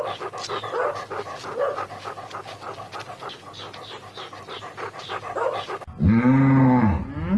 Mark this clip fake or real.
real